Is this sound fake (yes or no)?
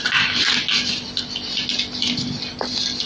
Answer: no